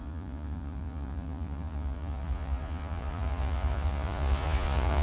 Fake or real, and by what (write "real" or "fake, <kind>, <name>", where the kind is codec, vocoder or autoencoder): fake, vocoder, Vocos